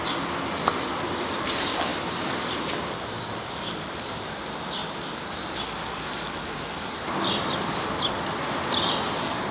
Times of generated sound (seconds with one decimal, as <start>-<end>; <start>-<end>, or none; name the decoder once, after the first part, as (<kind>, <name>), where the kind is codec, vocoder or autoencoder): none

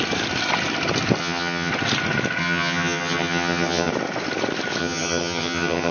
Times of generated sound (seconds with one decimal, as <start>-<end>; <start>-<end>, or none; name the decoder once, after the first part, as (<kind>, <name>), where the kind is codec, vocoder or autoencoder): 1.2-1.7 (vocoder, HiFi-GAN); 2.4-3.9; 4.8-5.9

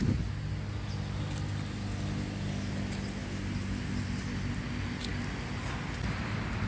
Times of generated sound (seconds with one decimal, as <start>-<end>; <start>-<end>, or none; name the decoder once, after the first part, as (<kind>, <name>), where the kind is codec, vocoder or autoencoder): none